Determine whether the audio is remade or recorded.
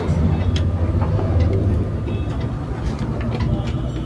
recorded